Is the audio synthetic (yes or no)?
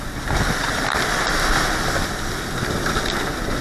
no